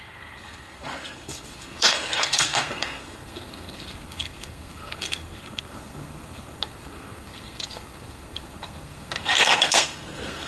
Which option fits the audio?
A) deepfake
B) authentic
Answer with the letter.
A